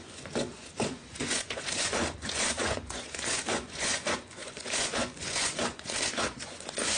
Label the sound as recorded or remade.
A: remade